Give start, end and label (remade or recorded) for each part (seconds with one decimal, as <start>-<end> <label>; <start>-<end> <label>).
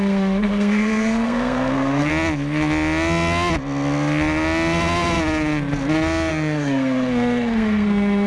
0.0-2.1 remade; 2.1-6.3 recorded; 6.3-8.3 remade